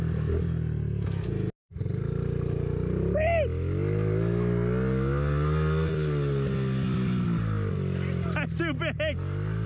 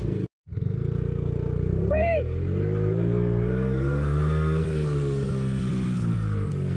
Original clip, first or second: first